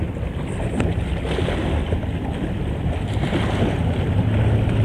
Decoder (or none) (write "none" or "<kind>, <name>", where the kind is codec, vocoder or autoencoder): none